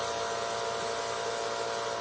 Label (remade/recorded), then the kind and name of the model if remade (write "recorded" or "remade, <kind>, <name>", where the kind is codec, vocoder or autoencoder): recorded